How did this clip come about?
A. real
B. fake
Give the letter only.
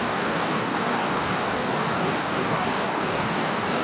B